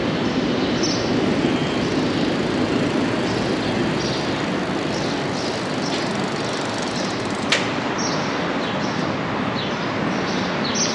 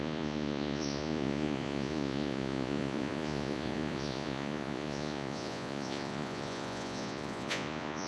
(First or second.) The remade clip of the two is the second